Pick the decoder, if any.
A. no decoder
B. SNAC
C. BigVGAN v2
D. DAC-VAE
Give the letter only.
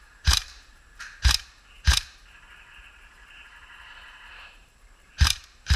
C